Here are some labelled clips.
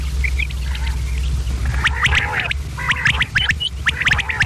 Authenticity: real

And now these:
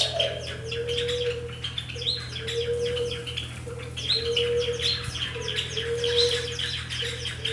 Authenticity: real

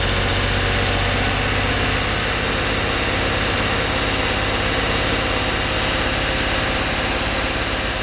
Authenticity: real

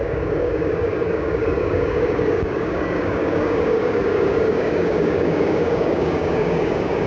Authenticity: fake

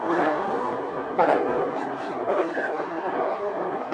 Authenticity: fake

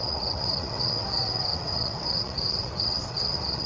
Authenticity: fake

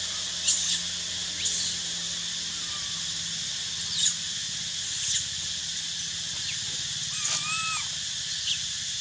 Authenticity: real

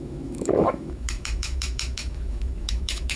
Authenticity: fake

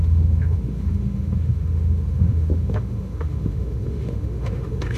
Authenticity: fake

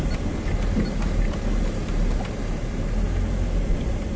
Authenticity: real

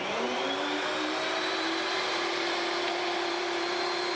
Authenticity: fake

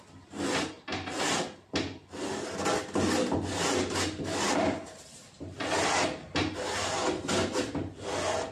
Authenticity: real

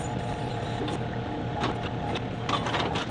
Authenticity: real